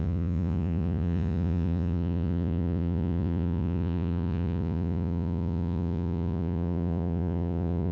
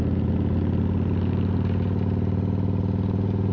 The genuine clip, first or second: second